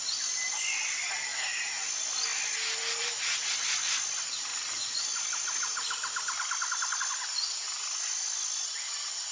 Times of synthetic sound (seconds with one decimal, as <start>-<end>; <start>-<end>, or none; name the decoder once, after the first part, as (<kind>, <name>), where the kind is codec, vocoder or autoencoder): 1.3-1.9 (vocoder, BigVGAN v2)